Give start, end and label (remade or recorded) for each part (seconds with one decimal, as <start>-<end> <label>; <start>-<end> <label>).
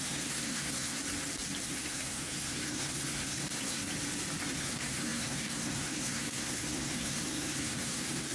0.0-1.0 remade; 1.0-1.6 recorded; 1.6-3.8 remade; 3.8-4.5 recorded; 4.5-8.3 remade